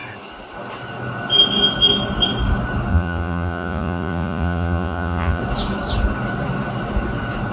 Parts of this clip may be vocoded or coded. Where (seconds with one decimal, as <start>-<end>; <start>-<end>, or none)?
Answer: 2.9-5.4